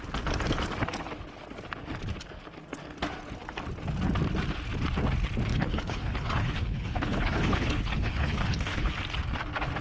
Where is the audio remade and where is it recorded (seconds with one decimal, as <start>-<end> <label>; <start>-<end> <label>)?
0.0-5.5 recorded; 5.5-8.9 remade; 8.9-9.8 recorded